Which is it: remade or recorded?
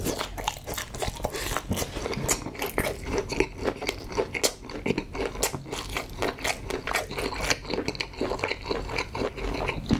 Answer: recorded